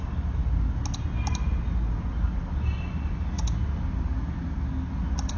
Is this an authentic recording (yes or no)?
yes